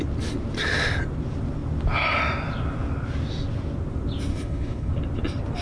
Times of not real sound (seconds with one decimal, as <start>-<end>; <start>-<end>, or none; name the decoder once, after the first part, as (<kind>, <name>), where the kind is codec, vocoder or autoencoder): 4.3-4.9 (codec, HILCodec)